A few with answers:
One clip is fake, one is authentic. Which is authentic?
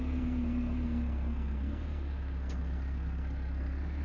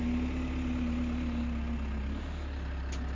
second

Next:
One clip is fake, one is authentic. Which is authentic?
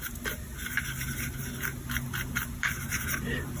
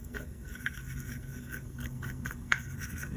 first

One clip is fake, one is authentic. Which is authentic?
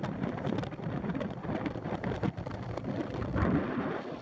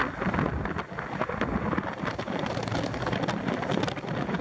second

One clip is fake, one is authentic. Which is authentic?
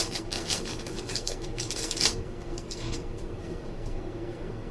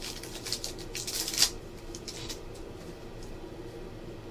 second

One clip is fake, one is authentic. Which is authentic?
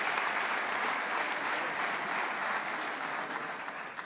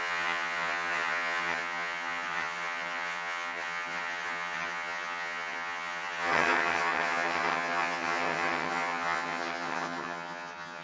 first